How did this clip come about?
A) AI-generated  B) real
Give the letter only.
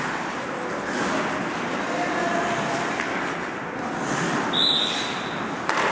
B